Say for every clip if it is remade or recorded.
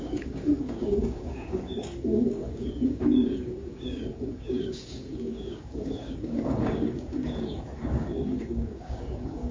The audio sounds remade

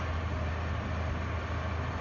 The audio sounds recorded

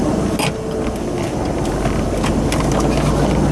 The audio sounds recorded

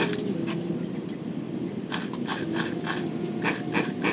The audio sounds recorded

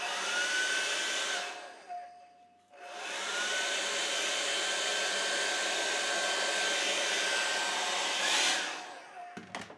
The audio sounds recorded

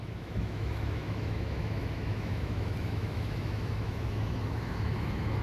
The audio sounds remade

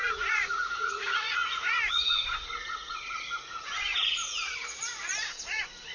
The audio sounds remade